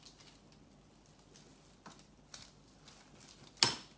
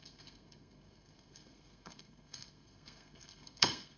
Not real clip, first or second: second